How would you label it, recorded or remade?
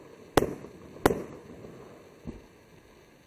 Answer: recorded